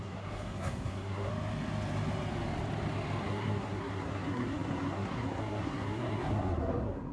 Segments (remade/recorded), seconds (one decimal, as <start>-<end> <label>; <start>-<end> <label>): 0.0-1.3 remade; 1.3-3.2 recorded; 3.2-7.1 remade